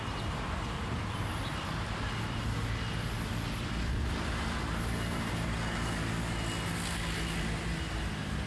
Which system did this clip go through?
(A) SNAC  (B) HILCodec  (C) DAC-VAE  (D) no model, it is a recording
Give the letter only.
D